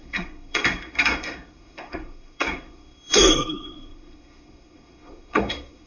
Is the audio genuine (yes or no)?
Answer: no